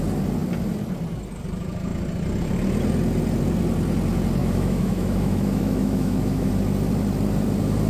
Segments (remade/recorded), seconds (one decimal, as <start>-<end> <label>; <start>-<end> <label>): 0.0-4.4 recorded; 4.4-6.5 remade; 6.5-7.9 recorded